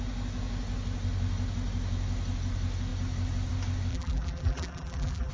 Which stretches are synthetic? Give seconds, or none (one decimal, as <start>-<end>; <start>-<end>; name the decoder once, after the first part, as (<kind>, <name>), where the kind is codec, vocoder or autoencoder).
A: 3.9-5.3 (vocoder, BigVGAN v2)